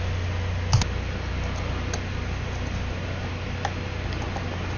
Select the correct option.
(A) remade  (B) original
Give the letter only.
B